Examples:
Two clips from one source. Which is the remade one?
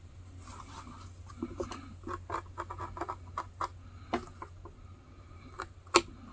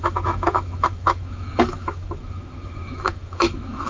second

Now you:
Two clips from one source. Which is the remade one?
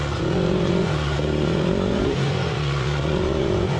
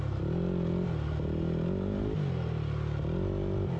first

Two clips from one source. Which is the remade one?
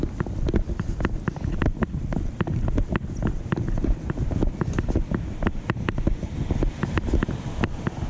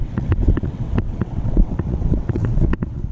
second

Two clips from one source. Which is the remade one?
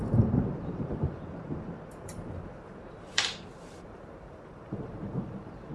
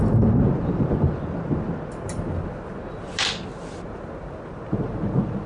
first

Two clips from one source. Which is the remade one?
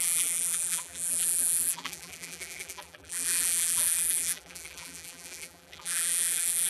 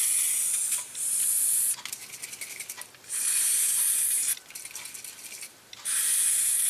first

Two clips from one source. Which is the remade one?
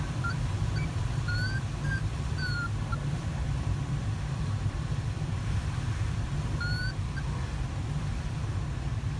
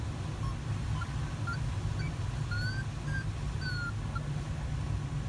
first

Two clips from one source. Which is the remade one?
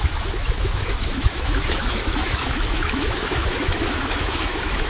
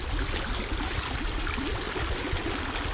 first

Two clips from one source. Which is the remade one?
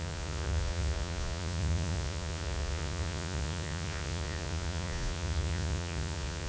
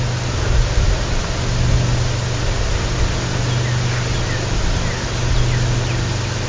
first